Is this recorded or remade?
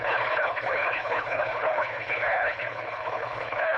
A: remade